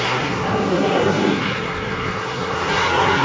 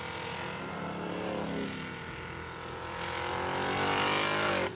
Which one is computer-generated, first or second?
first